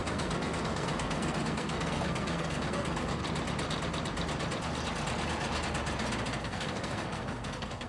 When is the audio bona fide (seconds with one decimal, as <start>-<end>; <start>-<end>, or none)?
3.2-6.4